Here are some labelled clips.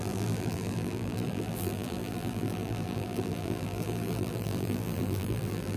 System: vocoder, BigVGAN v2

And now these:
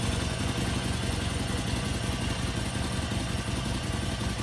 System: vocoder, Vocos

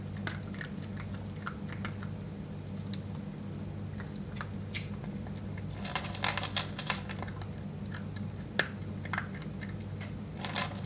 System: none